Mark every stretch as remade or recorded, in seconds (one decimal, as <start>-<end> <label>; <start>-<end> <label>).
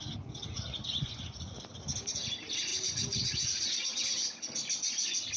0.0-0.5 recorded; 0.5-1.5 remade; 1.5-5.4 recorded